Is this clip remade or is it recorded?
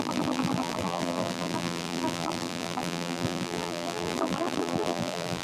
remade